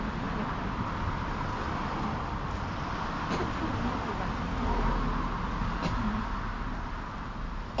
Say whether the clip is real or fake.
real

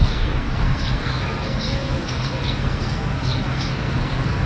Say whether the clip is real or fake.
fake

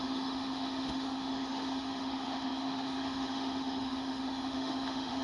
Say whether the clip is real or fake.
fake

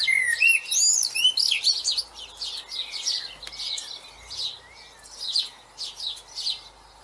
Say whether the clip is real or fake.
real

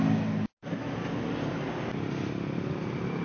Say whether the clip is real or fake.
real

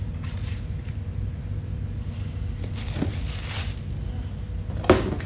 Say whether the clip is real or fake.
real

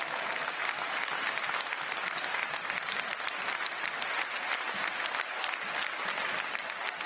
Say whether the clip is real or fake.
real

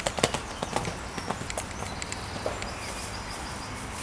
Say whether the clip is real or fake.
real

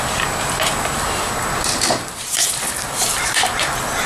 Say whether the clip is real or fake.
real